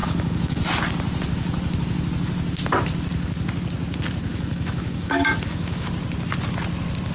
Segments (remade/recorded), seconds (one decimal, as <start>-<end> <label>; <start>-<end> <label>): 0.0-0.7 remade; 0.7-4.3 recorded; 4.3-5.9 remade; 5.9-7.1 recorded